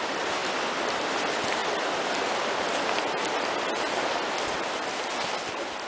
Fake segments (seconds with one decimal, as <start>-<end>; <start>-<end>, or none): none